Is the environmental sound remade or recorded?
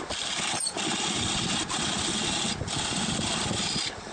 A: recorded